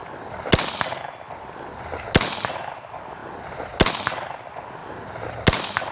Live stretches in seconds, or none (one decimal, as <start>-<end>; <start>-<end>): 0.0-5.9